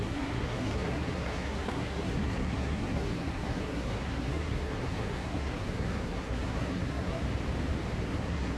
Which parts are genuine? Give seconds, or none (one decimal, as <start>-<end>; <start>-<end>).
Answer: 7.2-8.0